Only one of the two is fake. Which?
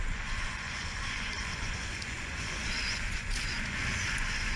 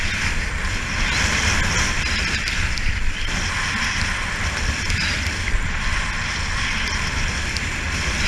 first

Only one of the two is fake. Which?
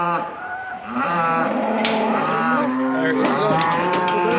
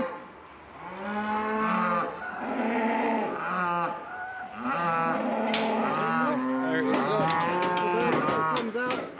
first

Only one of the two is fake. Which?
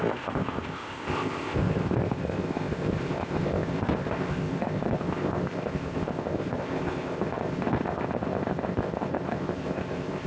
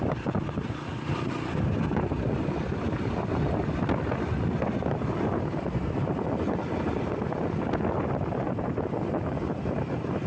first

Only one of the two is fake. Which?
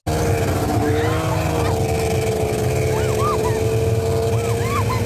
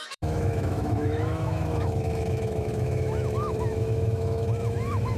second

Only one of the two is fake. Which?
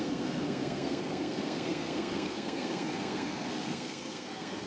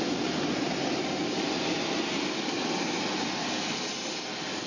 first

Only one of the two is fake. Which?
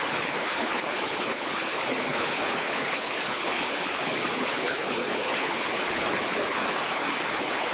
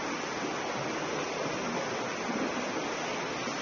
first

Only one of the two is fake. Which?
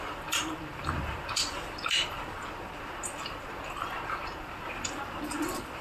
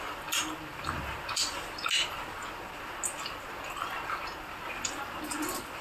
first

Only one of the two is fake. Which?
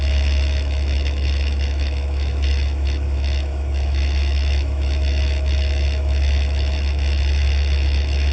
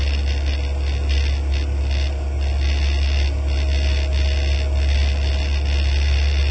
first